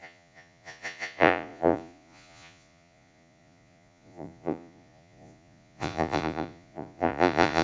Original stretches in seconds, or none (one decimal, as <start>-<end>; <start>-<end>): none